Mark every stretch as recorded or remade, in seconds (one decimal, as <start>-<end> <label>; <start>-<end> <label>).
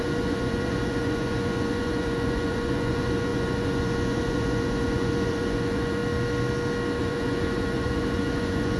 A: 0.0-6.0 remade; 6.0-7.0 recorded; 7.0-8.8 remade